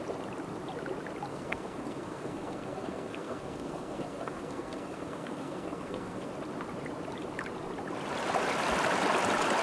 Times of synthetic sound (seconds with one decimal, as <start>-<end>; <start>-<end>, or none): 1.3-6.3